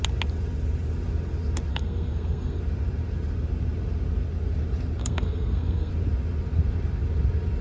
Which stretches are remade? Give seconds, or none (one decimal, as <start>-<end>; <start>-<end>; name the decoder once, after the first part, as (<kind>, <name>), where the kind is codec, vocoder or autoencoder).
1.7-2.6 (codec, SNAC); 5.0-5.9